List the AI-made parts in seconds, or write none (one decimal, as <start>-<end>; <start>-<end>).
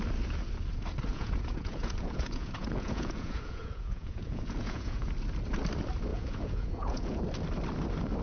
1.1-5.1; 6.1-7.2